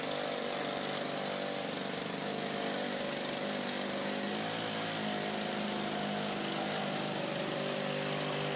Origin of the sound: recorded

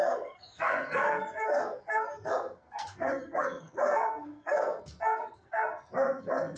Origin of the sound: remade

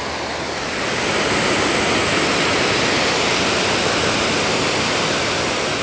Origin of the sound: recorded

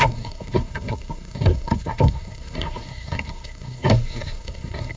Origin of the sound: remade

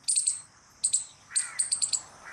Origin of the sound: recorded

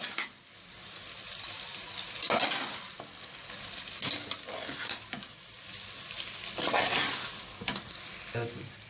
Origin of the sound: recorded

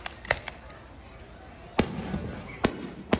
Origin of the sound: recorded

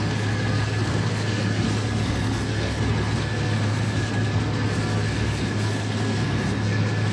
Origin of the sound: remade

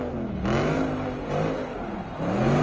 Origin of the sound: recorded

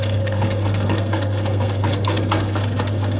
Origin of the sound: remade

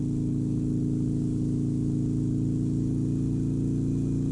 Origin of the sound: recorded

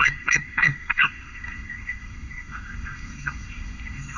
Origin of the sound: remade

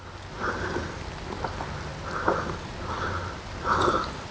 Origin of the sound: recorded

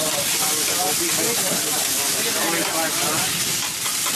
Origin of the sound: recorded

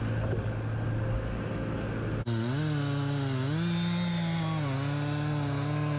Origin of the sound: recorded